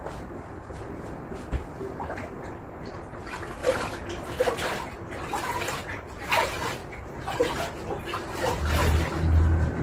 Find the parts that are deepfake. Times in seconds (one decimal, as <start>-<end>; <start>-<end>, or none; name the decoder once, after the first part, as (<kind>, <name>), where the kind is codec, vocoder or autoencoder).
3.6-4.4 (vocoder, BigVGAN v2); 6.8-8.7